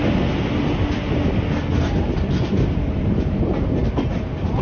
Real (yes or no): yes